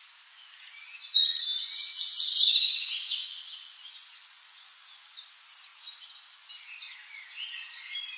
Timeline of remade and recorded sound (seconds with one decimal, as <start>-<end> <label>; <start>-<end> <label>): 0.0-0.8 recorded; 0.8-5.2 remade; 5.2-5.7 recorded; 5.7-6.5 remade; 6.5-8.2 recorded